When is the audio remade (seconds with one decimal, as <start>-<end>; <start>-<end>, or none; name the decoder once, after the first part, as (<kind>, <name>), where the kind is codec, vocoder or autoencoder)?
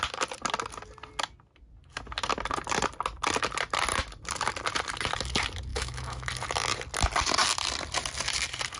5.7-6.3 (autoencoder, DAC-VAE)